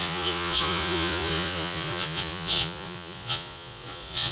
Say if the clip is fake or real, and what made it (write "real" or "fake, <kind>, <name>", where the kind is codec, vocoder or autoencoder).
fake, vocoder, Vocos